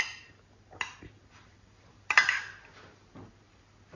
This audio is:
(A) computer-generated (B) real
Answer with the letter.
B